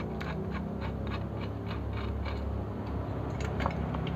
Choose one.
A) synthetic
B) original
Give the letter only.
B